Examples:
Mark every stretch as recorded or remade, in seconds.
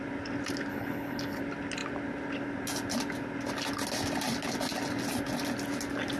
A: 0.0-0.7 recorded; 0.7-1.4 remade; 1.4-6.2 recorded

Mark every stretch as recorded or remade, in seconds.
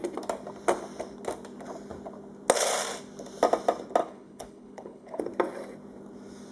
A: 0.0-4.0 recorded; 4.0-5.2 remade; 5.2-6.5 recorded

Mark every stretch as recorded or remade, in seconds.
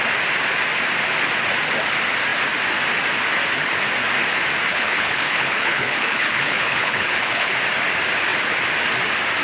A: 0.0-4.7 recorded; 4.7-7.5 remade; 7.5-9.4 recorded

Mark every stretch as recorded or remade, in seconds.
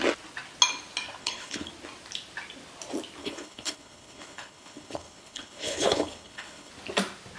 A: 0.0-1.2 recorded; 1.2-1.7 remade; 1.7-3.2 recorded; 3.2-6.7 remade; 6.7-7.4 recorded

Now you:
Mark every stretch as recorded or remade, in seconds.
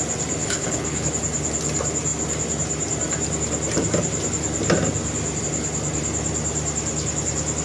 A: 0.0-0.4 recorded; 0.4-1.1 remade; 1.1-7.6 recorded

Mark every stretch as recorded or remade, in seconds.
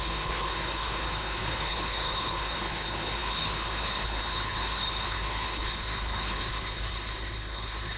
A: 0.0-8.0 remade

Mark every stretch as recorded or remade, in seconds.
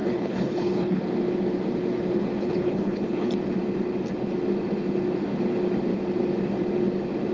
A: 0.0-1.0 remade; 1.0-2.4 recorded; 2.4-3.3 remade; 3.3-7.3 recorded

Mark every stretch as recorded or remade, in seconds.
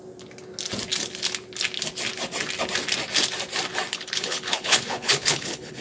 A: 0.0-3.9 recorded; 3.9-5.8 remade